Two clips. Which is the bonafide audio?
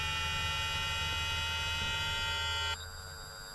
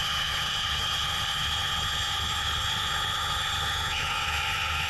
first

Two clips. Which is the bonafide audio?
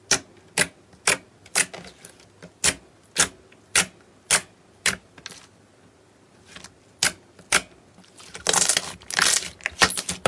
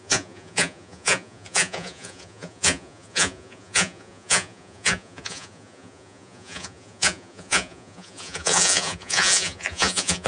first